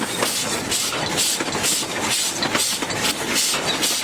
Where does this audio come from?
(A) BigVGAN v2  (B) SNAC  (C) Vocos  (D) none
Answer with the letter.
D